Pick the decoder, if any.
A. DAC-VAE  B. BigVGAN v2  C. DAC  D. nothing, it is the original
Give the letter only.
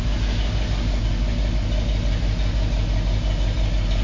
D